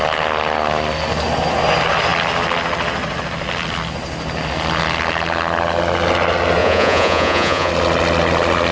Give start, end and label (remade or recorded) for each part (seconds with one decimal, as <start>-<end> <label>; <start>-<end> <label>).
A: 0.0-6.6 recorded; 6.6-7.7 remade; 7.7-8.7 recorded